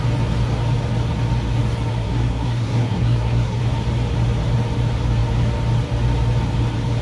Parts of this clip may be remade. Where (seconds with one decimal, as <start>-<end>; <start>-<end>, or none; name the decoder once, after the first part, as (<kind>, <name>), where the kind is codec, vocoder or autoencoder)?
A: 1.9-3.6 (codec, SNAC)